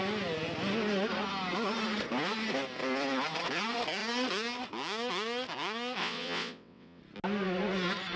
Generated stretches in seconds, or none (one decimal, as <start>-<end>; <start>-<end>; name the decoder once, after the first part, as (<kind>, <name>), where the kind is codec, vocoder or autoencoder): 6.0-7.0 (vocoder, WaveNeXt)